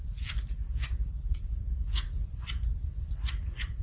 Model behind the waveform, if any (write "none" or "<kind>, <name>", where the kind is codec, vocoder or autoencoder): none